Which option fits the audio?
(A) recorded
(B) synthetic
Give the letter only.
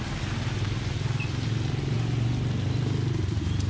A